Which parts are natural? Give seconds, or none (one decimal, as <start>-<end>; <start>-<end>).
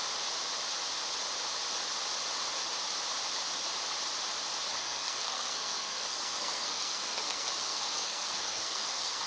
0.0-4.7